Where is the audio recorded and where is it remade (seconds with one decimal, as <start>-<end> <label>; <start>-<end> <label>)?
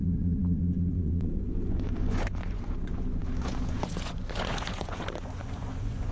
0.0-6.1 remade